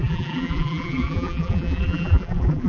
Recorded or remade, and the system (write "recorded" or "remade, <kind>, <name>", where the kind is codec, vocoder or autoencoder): remade, vocoder, BigVGAN v2